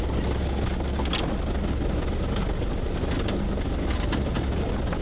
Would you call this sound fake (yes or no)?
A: no